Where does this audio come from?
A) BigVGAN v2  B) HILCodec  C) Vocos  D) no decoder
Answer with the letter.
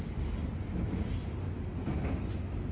D